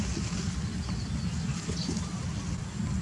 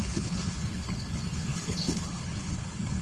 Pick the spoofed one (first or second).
second